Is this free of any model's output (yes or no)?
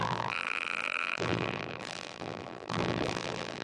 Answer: no